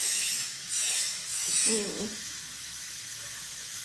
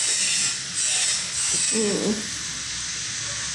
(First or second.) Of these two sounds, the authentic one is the second